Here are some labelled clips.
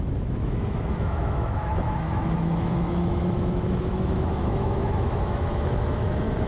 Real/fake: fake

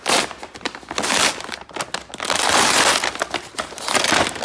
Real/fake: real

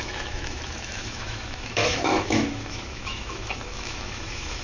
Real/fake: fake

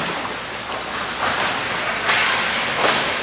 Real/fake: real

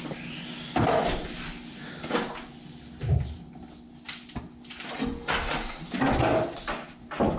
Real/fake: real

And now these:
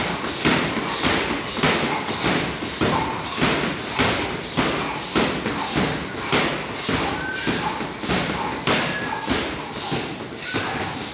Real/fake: real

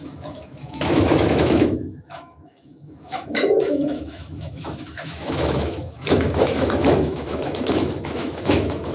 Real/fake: fake